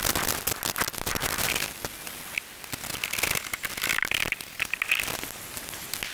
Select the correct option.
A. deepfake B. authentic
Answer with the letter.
B